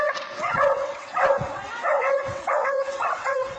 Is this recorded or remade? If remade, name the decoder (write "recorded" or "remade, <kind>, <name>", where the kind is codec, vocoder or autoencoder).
remade, vocoder, WaveNeXt